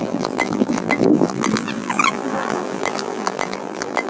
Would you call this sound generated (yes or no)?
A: yes